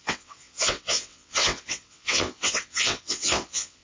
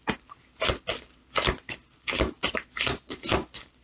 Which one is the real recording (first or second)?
second